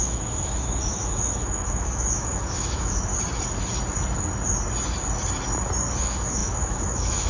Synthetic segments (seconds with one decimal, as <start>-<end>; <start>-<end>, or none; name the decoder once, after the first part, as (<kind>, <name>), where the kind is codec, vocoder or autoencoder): 0.0-3.1 (autoencoder, DAC-VAE); 6.0-7.3